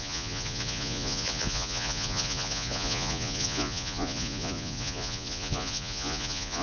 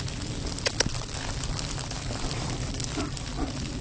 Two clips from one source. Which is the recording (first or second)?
second